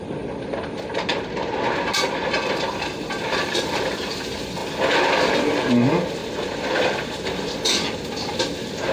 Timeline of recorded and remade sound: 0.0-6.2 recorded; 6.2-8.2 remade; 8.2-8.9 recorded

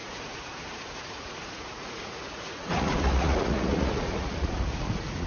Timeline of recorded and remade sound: 0.0-5.3 remade